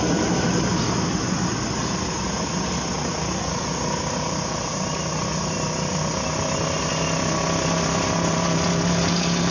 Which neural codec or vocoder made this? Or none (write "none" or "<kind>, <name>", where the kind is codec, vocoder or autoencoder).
none